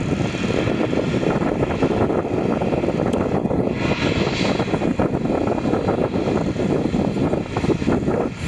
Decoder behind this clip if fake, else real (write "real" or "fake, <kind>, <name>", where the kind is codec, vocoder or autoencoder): real